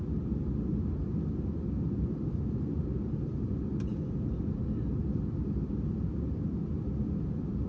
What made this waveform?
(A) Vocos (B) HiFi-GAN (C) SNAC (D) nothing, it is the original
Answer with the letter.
D